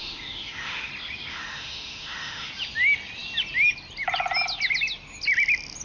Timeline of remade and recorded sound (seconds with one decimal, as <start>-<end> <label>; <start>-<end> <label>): 0.0-0.9 remade; 0.9-1.3 recorded; 1.3-2.5 remade; 2.5-5.8 recorded